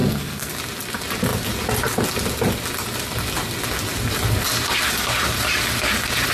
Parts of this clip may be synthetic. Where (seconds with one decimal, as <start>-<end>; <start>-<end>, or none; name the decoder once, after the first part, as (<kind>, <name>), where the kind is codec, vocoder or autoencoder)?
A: 0.0-0.5 (codec, SNAC)

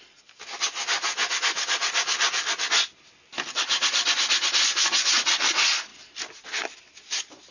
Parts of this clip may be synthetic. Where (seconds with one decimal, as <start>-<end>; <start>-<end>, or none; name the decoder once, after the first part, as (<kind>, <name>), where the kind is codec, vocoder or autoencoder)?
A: none

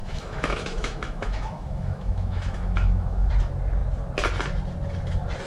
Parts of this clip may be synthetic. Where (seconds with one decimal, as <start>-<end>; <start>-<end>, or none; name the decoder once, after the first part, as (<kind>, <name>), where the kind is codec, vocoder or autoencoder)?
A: 0.0-3.3 (autoencoder, DAC-VAE)

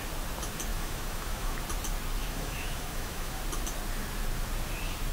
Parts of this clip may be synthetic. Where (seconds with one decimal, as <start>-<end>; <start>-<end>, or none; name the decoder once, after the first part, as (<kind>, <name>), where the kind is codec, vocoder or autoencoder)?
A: 0.7-1.6 (autoencoder, DAC-VAE); 2.2-3.4